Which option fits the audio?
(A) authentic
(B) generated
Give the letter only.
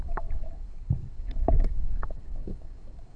B